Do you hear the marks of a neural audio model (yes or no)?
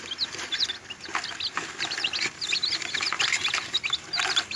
no